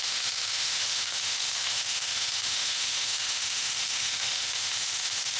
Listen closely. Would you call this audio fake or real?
fake